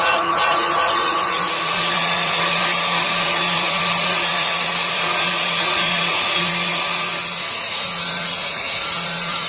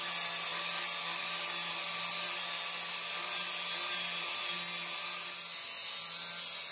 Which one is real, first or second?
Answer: second